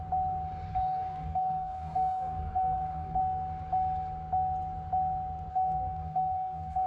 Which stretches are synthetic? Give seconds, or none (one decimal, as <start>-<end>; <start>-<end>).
0.7-3.2; 5.5-6.9